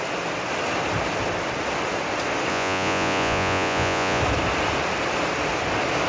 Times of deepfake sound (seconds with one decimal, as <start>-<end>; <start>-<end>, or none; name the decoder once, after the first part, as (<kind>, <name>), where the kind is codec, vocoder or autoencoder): 2.5-4.2 (vocoder, Vocos)